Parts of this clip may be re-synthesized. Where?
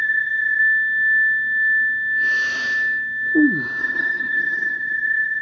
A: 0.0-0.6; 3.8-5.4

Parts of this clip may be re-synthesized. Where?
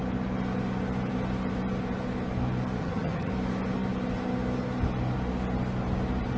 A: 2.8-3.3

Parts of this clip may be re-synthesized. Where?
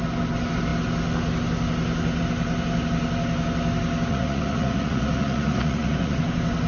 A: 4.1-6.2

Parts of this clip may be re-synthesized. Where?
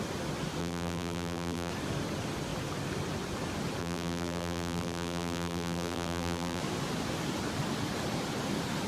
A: 0.6-1.7; 3.8-6.6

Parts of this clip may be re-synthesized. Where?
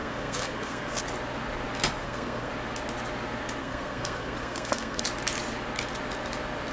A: 0.0-1.0; 2.0-2.5; 3.6-5.0